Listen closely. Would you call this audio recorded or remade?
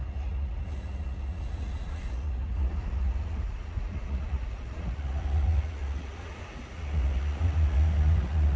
remade